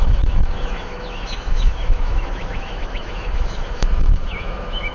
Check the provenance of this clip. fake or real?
fake